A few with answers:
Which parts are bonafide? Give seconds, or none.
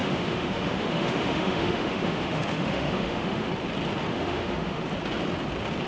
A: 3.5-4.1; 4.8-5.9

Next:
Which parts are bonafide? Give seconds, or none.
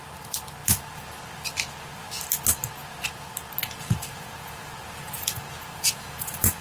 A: 0.0-3.6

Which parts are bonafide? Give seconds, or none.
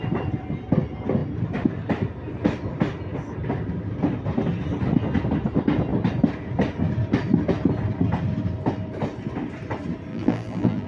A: 0.0-10.1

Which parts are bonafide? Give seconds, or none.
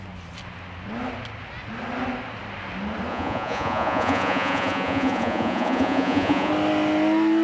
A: 0.0-3.1; 6.5-7.4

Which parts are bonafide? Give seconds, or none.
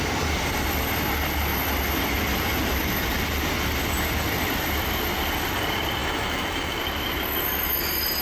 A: 0.0-6.0; 6.8-8.2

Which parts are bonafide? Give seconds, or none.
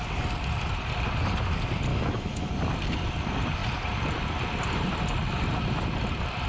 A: 0.0-1.9; 2.5-6.5